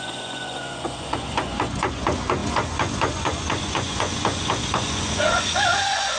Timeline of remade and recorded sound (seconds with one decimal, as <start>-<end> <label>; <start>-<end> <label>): 0.0-6.2 remade